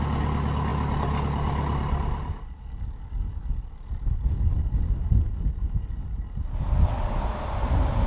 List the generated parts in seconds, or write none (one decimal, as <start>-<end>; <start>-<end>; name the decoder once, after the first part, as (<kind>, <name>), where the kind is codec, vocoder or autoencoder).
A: none